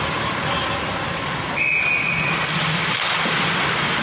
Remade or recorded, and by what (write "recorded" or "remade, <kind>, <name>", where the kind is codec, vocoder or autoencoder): recorded